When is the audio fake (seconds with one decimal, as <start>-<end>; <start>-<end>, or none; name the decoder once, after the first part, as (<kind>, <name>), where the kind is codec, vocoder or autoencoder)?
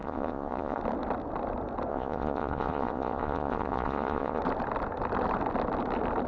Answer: 0.0-0.8 (vocoder, Vocos); 1.9-4.4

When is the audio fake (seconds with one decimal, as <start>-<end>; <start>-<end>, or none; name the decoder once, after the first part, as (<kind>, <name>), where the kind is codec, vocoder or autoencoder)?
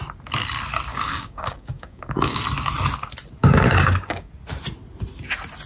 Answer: 0.9-2.4 (codec, DAC); 3.4-4.3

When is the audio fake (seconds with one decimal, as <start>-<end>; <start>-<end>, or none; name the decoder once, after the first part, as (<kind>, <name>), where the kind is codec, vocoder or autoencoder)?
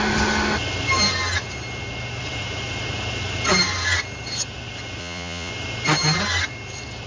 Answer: 5.0-5.5 (vocoder, Vocos)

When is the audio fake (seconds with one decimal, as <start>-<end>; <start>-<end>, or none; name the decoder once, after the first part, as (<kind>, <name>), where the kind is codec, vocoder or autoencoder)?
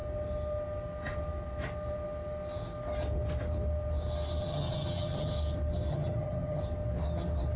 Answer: 4.4-5.3 (vocoder, HiFi-GAN); 5.9-6.6